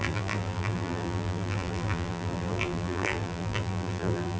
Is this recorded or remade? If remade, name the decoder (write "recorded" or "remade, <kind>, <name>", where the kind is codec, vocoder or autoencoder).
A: remade, vocoder, BigVGAN v2